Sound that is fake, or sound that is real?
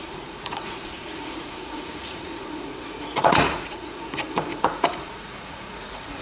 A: fake